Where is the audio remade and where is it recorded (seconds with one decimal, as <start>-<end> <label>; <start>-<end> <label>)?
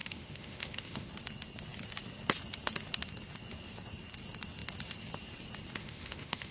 0.0-1.1 remade; 1.1-5.8 recorded; 5.8-6.5 remade